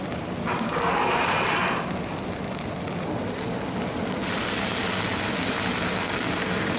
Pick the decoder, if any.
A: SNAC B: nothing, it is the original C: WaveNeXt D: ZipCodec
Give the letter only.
B